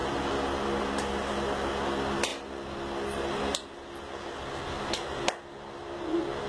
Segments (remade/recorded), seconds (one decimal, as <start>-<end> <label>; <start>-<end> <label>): 0.0-6.5 recorded